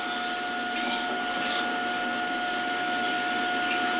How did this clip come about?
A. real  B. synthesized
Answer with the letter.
A